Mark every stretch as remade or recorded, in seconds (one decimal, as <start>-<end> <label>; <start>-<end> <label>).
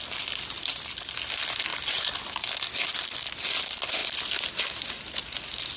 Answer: 0.0-5.8 recorded